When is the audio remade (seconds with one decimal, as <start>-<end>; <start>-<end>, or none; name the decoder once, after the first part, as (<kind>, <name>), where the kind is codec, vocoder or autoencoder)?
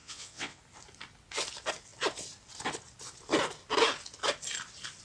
0.0-0.6 (vocoder, WaveNeXt)